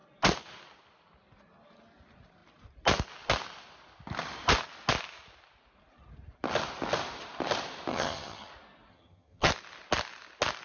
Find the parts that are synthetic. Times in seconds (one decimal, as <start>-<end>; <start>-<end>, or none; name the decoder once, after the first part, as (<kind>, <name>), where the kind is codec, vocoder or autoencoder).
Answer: 7.9-8.5 (vocoder, HiFi-GAN); 8.9-9.5